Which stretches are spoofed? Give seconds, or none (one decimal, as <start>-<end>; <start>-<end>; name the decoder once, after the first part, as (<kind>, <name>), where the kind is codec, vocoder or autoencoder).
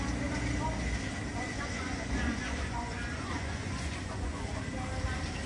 1.3-4.6 (vocoder, Vocos)